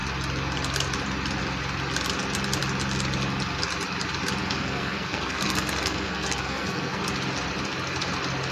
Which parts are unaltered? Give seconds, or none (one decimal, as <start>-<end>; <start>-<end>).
0.0-4.4; 7.0-8.5